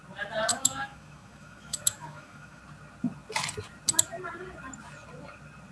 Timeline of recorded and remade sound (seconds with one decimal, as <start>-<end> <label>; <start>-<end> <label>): 0.0-0.5 recorded; 0.5-2.6 remade; 2.6-5.7 recorded

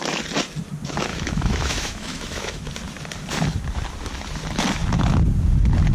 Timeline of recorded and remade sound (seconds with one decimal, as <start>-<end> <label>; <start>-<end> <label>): 0.0-1.1 recorded; 1.1-2.7 remade; 2.7-5.9 recorded